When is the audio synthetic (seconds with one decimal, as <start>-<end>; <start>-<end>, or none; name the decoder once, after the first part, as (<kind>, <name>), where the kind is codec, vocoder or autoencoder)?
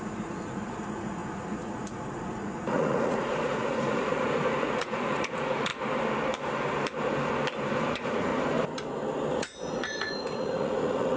0.0-5.7 (vocoder, Vocos); 7.9-8.3; 9.3-11.2